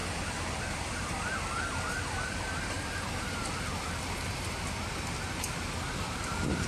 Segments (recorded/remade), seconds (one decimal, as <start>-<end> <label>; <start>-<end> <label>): 0.0-6.7 recorded